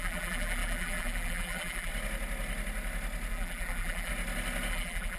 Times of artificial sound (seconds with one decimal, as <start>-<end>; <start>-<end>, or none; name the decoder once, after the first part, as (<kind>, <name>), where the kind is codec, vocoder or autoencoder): 0.0-1.9 (vocoder, BigVGAN v2); 3.3-4.1; 4.7-5.2